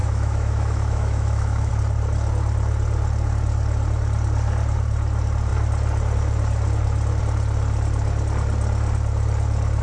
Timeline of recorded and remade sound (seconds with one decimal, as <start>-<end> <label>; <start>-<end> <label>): 0.0-1.7 remade; 1.7-9.8 recorded